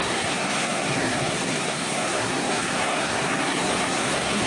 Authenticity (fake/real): fake